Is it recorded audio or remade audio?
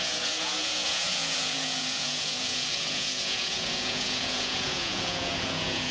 remade